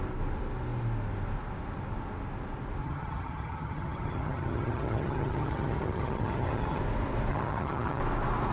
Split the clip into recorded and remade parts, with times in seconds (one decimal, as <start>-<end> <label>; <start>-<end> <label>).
0.0-2.8 recorded; 2.8-6.8 remade; 6.8-7.3 recorded; 7.3-8.0 remade; 8.0-8.5 recorded